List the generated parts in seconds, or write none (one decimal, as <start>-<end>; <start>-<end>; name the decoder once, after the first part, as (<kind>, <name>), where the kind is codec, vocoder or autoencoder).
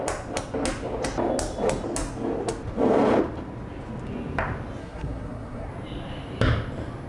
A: 4.8-5.7 (codec, SNAC)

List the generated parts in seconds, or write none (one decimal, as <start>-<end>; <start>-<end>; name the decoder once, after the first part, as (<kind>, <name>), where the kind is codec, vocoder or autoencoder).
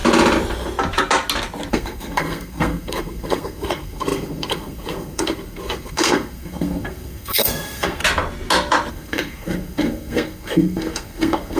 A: 1.7-8.0 (codec, SNAC); 8.9-11.6